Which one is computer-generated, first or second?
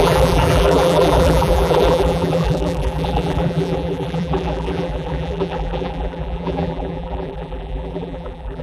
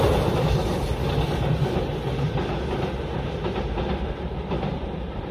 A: first